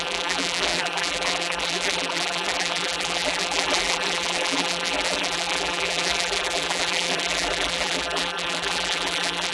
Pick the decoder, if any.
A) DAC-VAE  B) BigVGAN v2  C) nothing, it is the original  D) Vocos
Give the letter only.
B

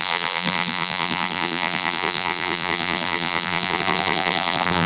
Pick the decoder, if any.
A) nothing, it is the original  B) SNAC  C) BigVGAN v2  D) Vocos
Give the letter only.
C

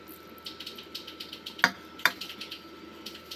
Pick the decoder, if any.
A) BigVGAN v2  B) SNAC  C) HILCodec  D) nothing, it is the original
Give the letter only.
D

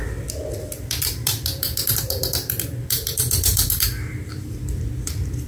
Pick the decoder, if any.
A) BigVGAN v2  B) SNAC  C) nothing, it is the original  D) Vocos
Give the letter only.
A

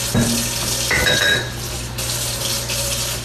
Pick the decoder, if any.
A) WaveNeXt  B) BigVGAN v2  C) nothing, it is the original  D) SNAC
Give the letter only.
C